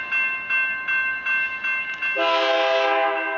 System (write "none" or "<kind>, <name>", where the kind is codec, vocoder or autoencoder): none